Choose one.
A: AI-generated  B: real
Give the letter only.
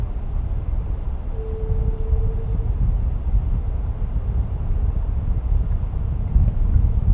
B